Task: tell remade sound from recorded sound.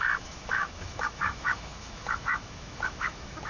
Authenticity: remade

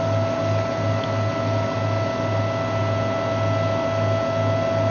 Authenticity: recorded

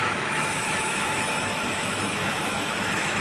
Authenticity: remade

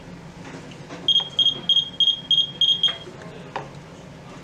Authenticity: recorded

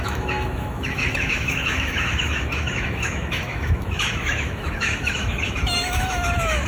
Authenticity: remade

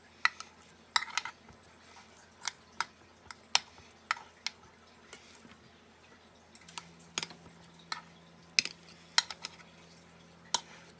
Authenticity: recorded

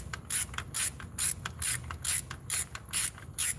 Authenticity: recorded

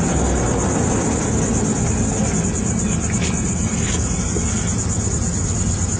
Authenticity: recorded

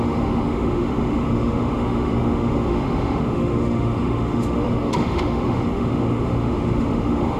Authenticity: remade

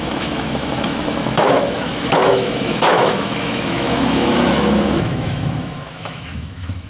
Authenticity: remade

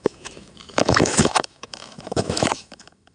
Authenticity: remade